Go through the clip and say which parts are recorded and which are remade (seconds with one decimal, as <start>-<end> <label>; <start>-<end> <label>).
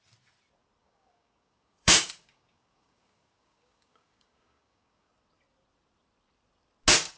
0.0-0.8 recorded; 0.8-5.1 remade; 5.1-7.2 recorded